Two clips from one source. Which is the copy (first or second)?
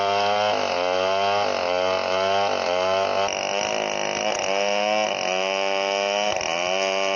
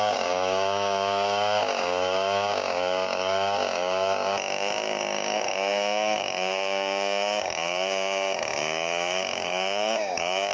second